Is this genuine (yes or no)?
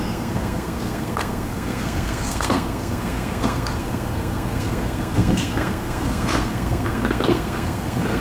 no